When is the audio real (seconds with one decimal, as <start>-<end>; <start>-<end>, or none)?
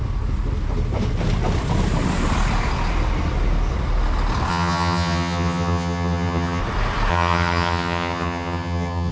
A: 0.0-4.5; 6.6-7.1